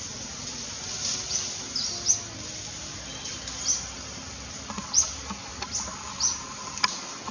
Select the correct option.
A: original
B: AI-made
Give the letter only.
A